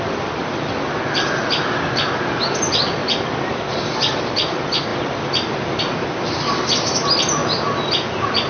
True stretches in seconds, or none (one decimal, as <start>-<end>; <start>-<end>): 0.0-8.5